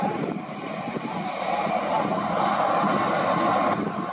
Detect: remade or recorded remade